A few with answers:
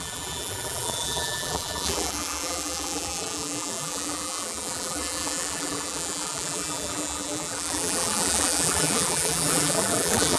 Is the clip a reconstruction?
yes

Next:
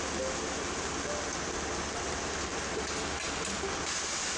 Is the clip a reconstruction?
no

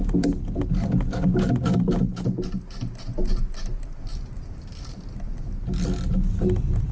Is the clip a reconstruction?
no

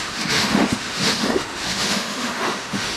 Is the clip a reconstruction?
yes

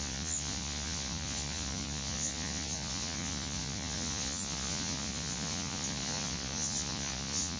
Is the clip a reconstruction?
yes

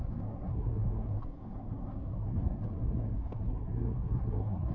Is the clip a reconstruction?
yes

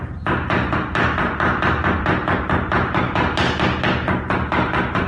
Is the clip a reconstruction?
no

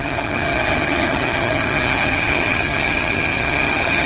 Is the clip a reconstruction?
yes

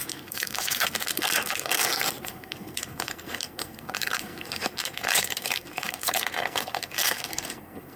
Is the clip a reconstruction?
yes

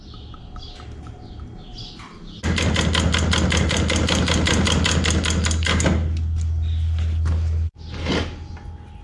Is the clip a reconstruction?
no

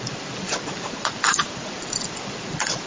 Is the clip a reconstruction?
yes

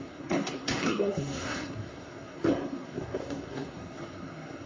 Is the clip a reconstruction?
yes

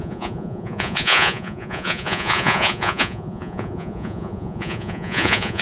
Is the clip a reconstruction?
yes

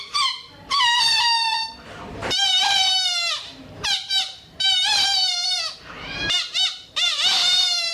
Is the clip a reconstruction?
yes